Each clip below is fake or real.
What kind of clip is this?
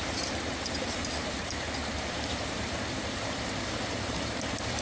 fake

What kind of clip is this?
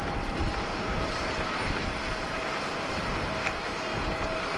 fake